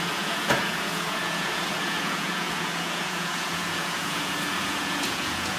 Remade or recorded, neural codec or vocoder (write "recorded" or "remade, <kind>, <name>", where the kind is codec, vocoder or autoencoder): remade, vocoder, Vocos